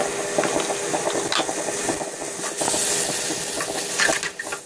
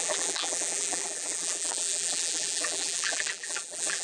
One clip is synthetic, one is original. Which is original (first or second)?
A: first